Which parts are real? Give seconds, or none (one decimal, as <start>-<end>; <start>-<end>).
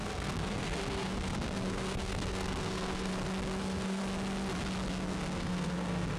3.1-3.6; 4.0-4.9